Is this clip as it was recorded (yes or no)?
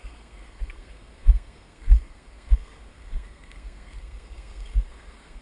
no